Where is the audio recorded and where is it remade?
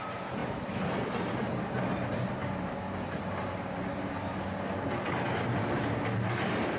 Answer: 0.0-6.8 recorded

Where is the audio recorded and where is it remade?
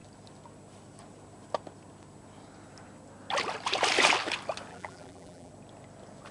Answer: 0.0-4.7 recorded; 4.7-5.5 remade; 5.5-6.3 recorded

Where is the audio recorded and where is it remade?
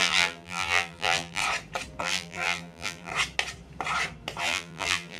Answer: 0.0-1.4 remade; 1.4-2.0 recorded; 2.0-3.1 remade; 3.1-4.4 recorded; 4.4-5.2 remade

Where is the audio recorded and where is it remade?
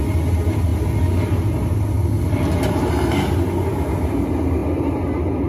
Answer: 0.0-5.5 recorded